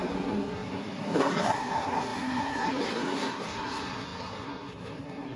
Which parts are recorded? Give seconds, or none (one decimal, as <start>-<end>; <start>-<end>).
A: none